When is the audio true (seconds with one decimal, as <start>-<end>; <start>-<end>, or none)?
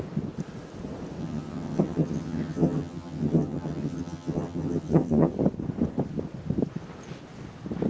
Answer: 0.0-1.2; 5.3-7.9